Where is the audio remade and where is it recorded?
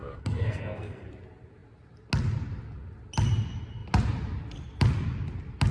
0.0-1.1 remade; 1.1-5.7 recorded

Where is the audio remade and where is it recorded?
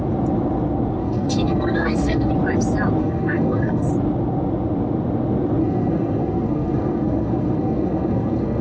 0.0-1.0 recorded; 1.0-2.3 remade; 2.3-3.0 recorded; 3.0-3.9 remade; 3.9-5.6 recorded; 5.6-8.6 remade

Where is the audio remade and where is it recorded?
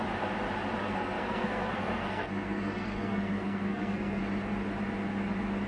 0.0-0.8 recorded; 0.8-4.2 remade; 4.2-5.7 recorded